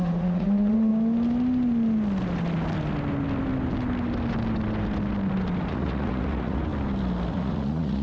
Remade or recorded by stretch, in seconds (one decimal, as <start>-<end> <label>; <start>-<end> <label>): 0.0-0.9 remade; 0.9-5.7 recorded; 5.7-6.7 remade; 6.7-7.3 recorded; 7.3-8.0 remade